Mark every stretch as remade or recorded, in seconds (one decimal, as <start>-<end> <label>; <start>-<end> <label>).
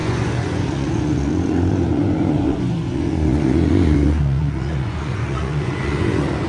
0.0-6.5 remade